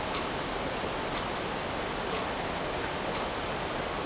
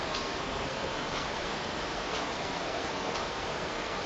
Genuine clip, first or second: first